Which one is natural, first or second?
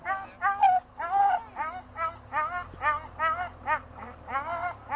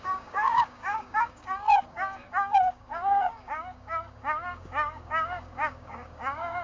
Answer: first